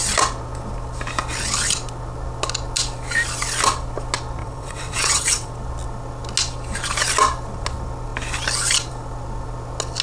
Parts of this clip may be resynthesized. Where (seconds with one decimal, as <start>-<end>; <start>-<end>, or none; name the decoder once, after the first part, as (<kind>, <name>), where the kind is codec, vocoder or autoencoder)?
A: 4.4-5.5 (vocoder, WaveNeXt)